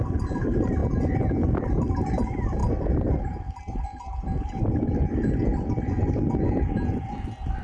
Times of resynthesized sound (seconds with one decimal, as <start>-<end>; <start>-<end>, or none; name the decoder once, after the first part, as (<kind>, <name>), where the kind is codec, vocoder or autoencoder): none